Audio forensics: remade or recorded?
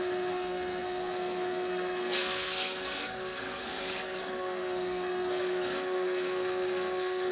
remade